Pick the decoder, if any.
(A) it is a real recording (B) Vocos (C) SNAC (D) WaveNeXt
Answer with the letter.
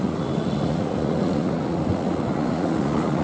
B